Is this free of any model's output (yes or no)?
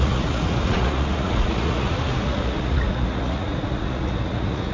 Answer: no